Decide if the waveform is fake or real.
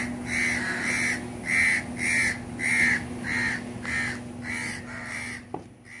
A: real